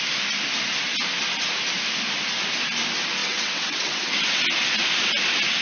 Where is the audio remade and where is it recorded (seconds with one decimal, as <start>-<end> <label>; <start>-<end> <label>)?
0.0-3.2 recorded; 3.2-4.4 remade; 4.4-5.6 recorded

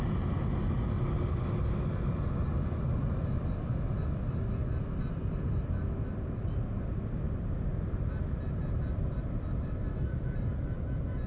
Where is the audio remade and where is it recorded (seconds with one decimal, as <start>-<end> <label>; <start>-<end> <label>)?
0.0-11.3 recorded

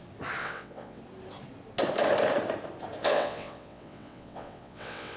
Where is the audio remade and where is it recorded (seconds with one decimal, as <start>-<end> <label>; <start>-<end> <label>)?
0.0-0.4 recorded; 0.4-1.0 remade; 1.0-3.0 recorded; 3.0-5.2 remade

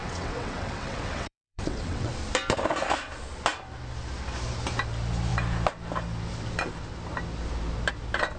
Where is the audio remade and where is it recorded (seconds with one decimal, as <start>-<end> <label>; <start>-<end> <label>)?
0.0-2.1 remade; 2.1-8.4 recorded

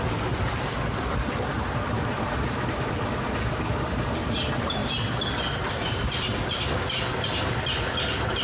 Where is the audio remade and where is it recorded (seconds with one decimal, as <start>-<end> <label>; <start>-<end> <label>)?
0.0-8.4 recorded

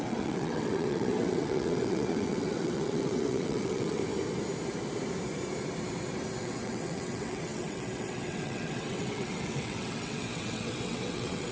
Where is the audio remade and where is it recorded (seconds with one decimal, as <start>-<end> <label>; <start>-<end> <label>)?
0.0-4.0 remade; 4.0-6.4 recorded; 6.4-11.5 remade

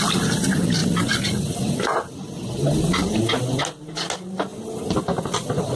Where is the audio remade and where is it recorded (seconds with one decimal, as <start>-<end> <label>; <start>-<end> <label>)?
0.0-5.8 recorded